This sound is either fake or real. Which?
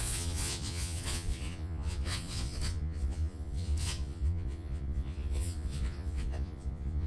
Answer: fake